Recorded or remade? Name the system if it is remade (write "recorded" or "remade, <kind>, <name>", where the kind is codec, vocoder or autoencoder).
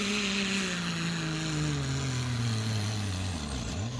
recorded